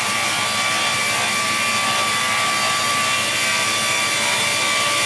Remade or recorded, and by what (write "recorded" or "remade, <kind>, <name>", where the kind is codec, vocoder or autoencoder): recorded